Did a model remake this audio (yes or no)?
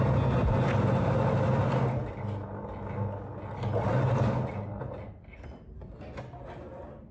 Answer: no